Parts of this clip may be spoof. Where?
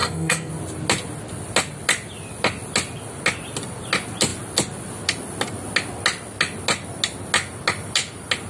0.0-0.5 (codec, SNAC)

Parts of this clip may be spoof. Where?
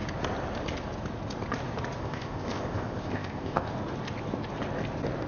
2.0-3.7 (codec, ZipCodec)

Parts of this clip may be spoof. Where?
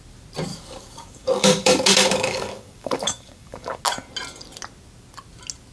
0.5-3.8 (codec, DAC)